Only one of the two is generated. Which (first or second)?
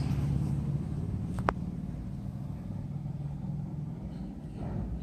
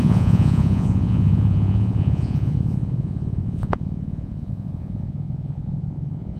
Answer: second